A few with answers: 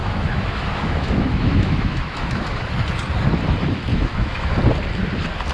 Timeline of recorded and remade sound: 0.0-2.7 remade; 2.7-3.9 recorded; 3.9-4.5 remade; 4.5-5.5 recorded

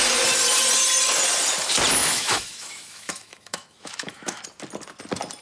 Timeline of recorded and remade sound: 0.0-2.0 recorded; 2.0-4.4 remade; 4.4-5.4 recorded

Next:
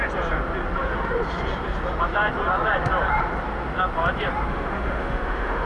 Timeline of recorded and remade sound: 0.0-4.5 recorded; 4.5-5.7 remade

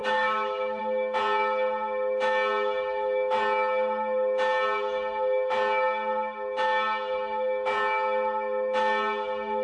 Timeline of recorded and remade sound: 0.0-0.8 remade; 0.8-9.6 recorded